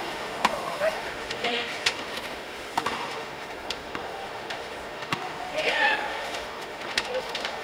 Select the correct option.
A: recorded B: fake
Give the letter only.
B